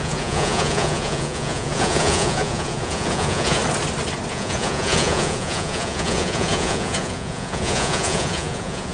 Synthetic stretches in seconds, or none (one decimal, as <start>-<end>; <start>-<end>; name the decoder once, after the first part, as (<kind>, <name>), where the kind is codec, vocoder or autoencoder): 0.0-3.6 (vocoder, Vocos); 4.3-8.9